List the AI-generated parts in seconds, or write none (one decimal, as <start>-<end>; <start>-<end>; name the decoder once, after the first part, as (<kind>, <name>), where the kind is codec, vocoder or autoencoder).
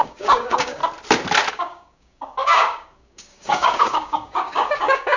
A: 0.0-0.8 (codec, DAC); 1.5-5.2